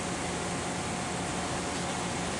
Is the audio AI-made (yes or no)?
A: no